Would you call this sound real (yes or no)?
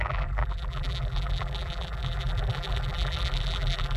no